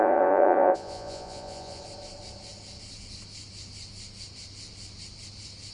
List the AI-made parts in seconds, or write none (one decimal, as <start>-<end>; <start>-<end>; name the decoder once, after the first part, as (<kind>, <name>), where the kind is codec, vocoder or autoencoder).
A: 0.0-1.8 (vocoder, Vocos)